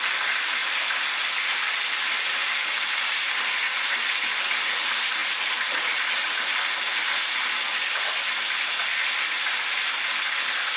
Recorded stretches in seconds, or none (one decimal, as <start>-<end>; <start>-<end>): 0.0-0.6; 1.2-2.4; 4.0-10.8